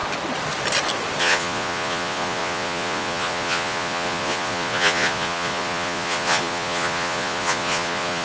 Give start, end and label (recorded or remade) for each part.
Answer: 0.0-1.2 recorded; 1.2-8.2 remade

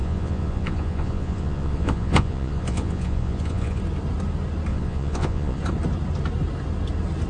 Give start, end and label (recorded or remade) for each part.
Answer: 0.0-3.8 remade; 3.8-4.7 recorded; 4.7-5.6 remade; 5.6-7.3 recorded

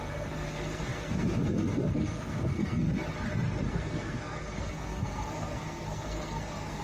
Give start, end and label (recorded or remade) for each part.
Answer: 0.0-3.0 remade; 3.0-3.7 recorded; 3.7-6.8 remade

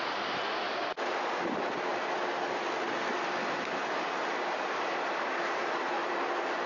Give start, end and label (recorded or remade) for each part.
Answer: 0.0-6.7 recorded

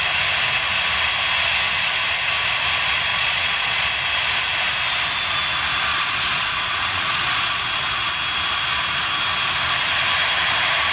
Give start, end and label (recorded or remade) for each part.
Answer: 0.0-3.1 recorded; 3.1-3.9 remade; 3.9-5.9 recorded; 5.9-8.1 remade; 8.1-10.9 recorded

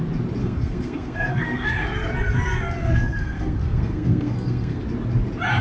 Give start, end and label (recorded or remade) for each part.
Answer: 0.0-0.4 recorded; 0.4-1.7 remade; 1.7-2.8 recorded; 2.8-4.8 remade; 4.8-5.6 recorded

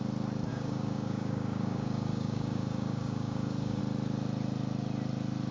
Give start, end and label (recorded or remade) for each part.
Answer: 0.0-0.5 recorded; 0.5-3.8 remade; 3.8-5.5 recorded

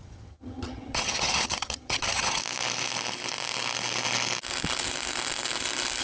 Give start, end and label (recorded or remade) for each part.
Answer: 0.0-2.4 remade; 2.4-6.0 recorded